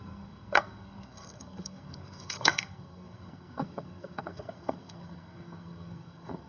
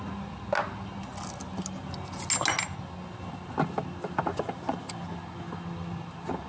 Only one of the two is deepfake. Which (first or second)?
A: first